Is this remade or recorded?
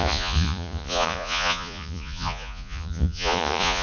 remade